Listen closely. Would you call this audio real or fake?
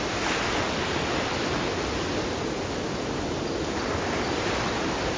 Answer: real